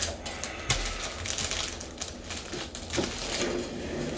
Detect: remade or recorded recorded